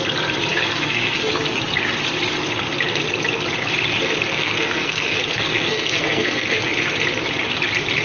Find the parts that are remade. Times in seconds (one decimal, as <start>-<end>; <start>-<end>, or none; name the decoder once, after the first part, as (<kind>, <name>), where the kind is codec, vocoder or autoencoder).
0.5-1.3 (codec, SNAC); 4.3-6.7